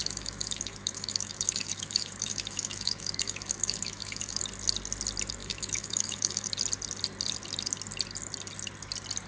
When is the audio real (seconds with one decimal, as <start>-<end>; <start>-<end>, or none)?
4.4-5.4; 6.5-9.3